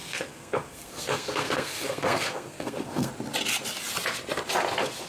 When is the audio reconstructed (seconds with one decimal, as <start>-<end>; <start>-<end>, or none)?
0.0-3.1